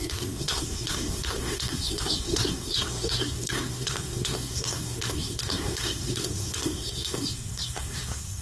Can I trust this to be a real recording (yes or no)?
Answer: no